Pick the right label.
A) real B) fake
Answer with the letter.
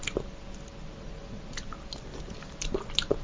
A